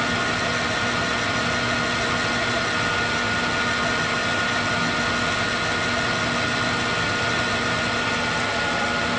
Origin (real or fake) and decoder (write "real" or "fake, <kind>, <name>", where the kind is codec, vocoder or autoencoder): real